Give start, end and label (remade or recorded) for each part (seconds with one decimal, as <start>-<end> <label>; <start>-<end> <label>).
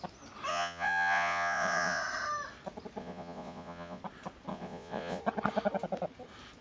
0.0-0.5 recorded; 0.5-2.0 remade; 2.0-3.0 recorded; 3.0-4.0 remade; 4.0-4.5 recorded; 4.5-5.2 remade; 5.2-6.6 recorded